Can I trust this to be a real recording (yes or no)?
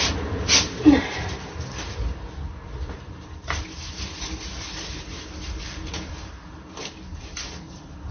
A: no